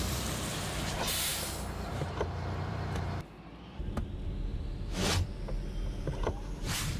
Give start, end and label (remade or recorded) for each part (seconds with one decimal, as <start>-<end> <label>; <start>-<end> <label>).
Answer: 0.0-3.8 remade; 3.8-5.9 recorded; 5.9-7.0 remade